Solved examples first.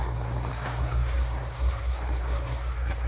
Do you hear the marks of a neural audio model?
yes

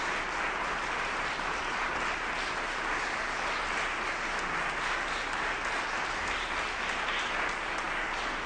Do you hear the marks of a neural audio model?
no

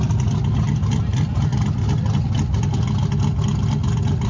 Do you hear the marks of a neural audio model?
no